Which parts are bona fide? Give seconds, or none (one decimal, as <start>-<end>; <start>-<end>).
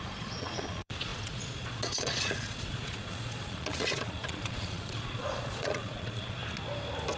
6.4-7.2